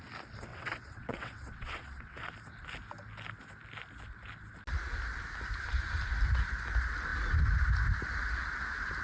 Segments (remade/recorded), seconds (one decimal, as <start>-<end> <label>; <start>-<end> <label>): 0.0-0.5 recorded; 0.5-2.3 remade; 2.3-9.0 recorded